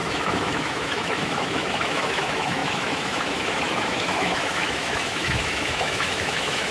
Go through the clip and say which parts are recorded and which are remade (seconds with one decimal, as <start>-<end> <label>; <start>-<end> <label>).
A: 0.0-6.7 remade